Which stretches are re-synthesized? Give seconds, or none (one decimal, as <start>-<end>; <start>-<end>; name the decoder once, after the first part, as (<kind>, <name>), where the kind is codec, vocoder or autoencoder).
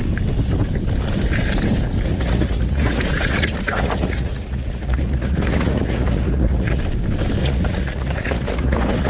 2.1-6.8 (vocoder, Vocos); 7.4-9.1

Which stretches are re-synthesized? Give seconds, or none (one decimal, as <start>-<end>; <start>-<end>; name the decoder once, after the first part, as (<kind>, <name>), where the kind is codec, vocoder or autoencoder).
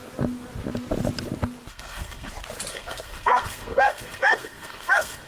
1.7-2.3 (codec, SNAC); 2.7-5.3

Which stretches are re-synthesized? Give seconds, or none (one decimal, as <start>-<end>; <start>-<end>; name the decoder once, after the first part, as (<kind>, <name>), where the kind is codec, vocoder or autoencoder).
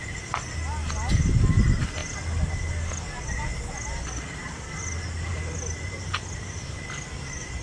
none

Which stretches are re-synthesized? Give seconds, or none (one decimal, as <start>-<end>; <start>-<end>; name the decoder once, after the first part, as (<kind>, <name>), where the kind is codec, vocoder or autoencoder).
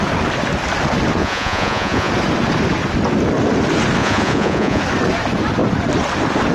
1.2-2.1 (vocoder, Vocos); 4.0-4.8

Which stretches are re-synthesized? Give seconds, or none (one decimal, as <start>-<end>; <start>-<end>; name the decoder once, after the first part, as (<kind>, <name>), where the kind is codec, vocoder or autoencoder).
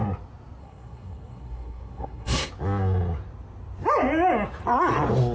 0.6-2.5 (codec, SNAC)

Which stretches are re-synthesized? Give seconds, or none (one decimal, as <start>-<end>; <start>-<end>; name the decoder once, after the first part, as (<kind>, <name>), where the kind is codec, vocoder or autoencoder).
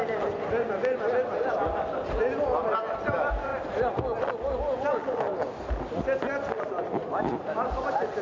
none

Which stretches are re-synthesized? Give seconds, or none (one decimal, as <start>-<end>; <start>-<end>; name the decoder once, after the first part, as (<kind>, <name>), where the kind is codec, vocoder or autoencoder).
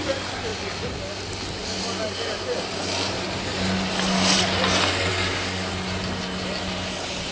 5.1-5.7 (codec, DAC)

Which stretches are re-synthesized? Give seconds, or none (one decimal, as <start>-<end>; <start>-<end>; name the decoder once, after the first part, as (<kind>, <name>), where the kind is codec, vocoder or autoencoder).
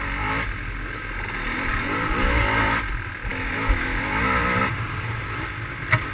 3.3-4.2 (autoencoder, DAC-VAE)